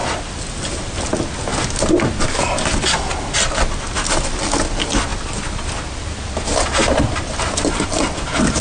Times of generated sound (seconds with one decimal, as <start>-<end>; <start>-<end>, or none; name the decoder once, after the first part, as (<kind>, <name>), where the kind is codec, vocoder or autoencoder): none